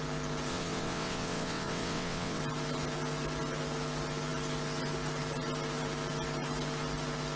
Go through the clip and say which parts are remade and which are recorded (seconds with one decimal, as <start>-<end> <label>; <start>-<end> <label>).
0.0-0.5 recorded; 0.5-2.4 remade; 2.4-7.4 recorded